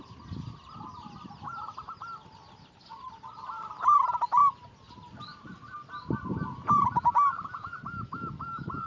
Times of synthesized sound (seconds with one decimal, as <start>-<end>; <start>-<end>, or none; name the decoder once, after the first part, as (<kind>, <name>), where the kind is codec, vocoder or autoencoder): none